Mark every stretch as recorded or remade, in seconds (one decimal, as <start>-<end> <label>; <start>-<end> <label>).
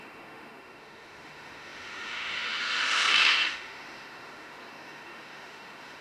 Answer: 0.0-6.0 remade